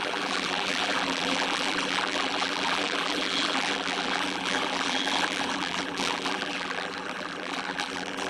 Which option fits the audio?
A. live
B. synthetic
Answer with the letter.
B